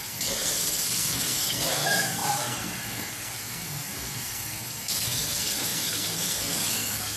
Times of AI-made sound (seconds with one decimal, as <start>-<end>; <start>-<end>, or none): 0.0-7.2